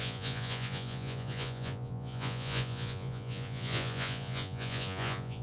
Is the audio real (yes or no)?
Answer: no